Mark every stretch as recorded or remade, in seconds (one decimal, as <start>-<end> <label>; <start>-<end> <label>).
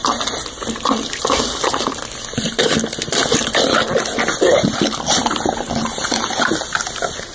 0.0-7.3 remade